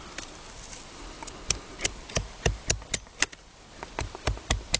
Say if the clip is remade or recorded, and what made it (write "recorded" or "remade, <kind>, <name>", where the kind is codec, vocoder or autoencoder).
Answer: recorded